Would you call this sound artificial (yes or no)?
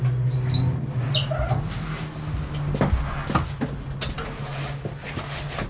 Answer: no